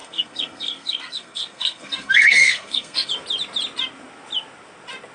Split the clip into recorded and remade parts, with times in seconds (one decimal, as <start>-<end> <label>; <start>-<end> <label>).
0.0-3.1 remade; 3.1-5.1 recorded